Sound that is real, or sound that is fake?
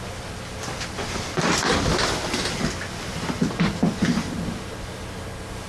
real